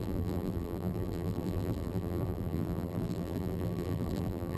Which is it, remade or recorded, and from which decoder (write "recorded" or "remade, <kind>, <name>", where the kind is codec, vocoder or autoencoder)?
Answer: remade, vocoder, BigVGAN v2